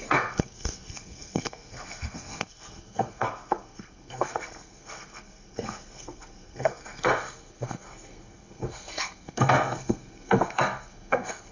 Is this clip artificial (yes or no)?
yes